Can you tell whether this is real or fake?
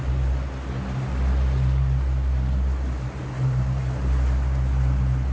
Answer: real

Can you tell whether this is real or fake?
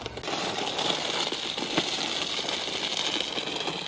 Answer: real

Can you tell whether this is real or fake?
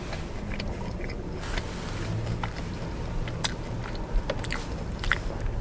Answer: real